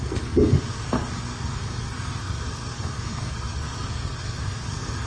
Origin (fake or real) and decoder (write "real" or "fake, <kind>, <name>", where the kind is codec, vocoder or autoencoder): fake, codec, SNAC